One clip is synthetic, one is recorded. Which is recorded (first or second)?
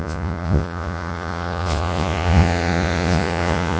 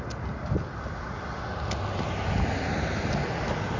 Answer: second